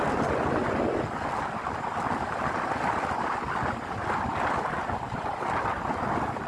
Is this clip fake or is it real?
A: real